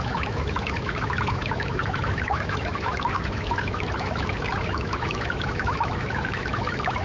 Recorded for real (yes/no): no